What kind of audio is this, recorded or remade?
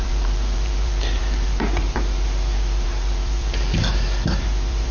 remade